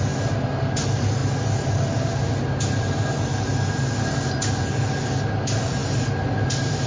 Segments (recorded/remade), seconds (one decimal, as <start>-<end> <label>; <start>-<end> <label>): 0.0-6.9 recorded